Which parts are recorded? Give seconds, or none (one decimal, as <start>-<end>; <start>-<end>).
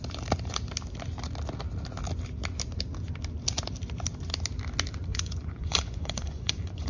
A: 0.0-5.1